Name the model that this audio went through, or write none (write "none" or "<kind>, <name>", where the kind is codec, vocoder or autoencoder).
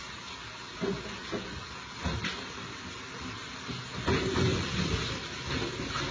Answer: none